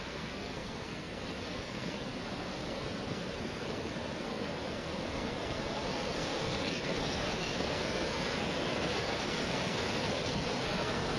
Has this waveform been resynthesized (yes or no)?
yes